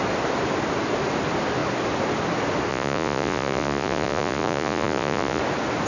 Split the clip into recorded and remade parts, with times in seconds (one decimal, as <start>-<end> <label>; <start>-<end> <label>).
0.0-2.7 recorded; 2.7-5.4 remade; 5.4-5.9 recorded